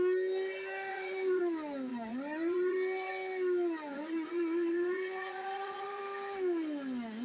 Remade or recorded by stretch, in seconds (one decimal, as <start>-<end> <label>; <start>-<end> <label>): 0.0-0.9 recorded; 0.9-1.4 remade; 1.4-1.9 recorded; 1.9-3.1 remade; 3.1-3.9 recorded; 3.9-6.0 remade; 6.0-7.2 recorded